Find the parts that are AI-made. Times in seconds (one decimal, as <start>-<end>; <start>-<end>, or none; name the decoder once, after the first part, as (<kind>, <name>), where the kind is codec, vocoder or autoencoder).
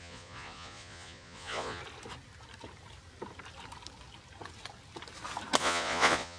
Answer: 0.0-1.8 (vocoder, Vocos); 5.6-6.4